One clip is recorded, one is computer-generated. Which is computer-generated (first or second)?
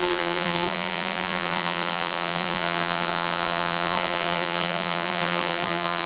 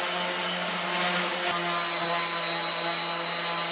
first